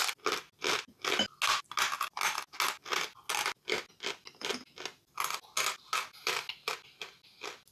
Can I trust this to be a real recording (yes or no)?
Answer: yes